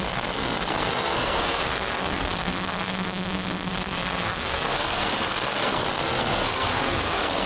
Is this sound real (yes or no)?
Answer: no